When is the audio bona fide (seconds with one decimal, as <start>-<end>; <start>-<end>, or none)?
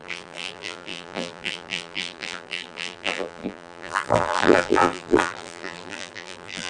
none